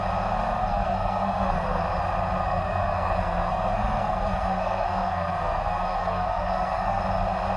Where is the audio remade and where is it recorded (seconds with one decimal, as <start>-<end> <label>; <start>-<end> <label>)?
0.0-0.6 recorded; 0.6-1.8 remade; 1.8-2.4 recorded; 2.4-7.0 remade; 7.0-7.6 recorded